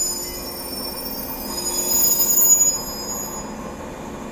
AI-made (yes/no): no